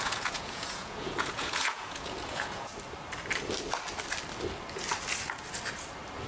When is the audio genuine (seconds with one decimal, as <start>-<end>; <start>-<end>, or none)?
2.7-6.3